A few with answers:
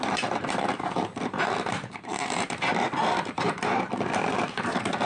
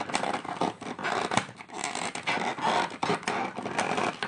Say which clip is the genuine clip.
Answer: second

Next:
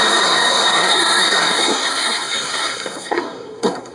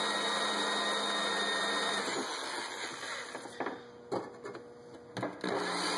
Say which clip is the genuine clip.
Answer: second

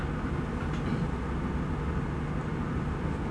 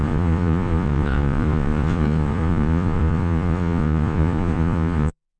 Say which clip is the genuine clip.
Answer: first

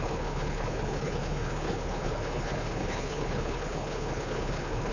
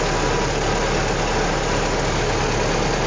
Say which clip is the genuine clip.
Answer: second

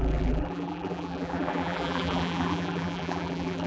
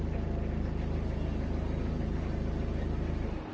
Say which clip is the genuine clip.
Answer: second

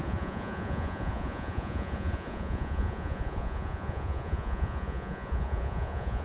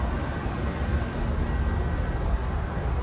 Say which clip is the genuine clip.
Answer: second